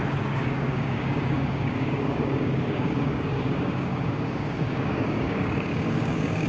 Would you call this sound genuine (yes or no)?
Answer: no